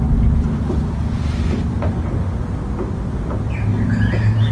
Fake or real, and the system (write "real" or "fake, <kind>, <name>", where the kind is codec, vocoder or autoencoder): real